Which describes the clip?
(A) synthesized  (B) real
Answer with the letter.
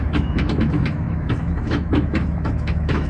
A